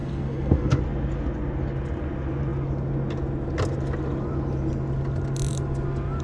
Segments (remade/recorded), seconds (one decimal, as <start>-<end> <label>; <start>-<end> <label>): 0.0-0.8 remade; 0.8-6.2 recorded